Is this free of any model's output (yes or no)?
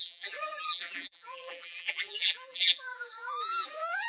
no